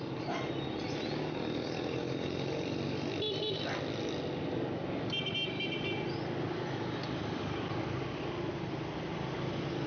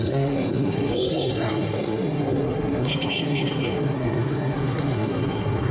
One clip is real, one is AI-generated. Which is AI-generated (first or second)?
second